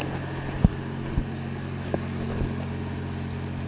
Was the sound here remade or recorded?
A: recorded